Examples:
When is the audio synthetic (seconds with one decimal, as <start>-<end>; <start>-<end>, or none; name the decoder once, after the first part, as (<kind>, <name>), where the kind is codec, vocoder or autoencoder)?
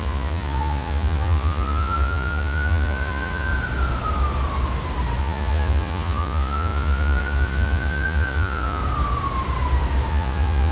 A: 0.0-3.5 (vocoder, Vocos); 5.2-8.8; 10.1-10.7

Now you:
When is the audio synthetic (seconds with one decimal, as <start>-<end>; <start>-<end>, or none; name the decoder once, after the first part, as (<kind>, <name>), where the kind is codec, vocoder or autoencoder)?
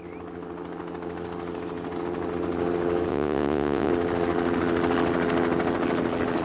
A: 3.1-3.9 (vocoder, Vocos)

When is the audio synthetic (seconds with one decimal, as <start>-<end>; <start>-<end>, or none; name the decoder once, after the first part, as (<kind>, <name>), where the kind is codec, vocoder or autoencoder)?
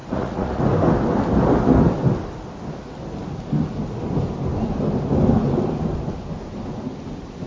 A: 0.0-0.6 (vocoder, Vocos)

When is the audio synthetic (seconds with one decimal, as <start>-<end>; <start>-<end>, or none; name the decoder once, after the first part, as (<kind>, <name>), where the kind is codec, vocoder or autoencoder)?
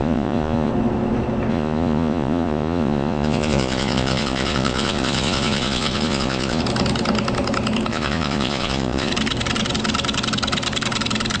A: 0.0-0.7 (vocoder, Vocos); 1.5-6.6; 7.9-9.1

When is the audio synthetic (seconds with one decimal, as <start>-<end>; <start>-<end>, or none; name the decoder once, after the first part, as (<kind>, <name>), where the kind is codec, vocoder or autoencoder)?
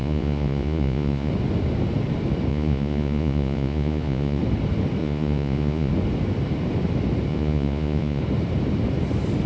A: 0.0-1.3 (vocoder, Vocos); 2.5-4.4; 5.0-5.9; 7.3-8.2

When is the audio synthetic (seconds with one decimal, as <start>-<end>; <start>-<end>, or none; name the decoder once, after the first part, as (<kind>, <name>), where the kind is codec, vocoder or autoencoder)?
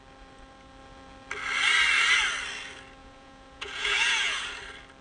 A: 3.0-4.5 (vocoder, Vocos)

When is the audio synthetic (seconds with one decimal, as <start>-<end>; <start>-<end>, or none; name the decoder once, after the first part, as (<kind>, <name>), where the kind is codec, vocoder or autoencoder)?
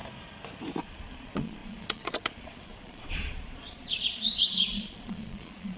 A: 0.8-5.8 (vocoder, Vocos)